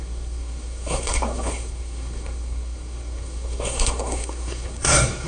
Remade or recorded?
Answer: remade